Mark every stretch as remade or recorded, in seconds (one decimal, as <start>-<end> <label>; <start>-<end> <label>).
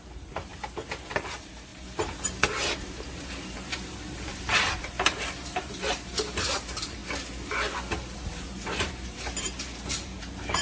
0.0-0.5 remade; 0.5-1.1 recorded; 1.1-7.0 remade; 7.0-8.0 recorded; 8.0-10.6 remade